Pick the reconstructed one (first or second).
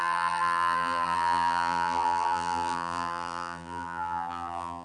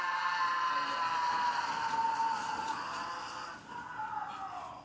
first